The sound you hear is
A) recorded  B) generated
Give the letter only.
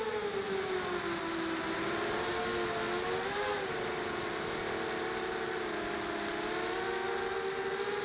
A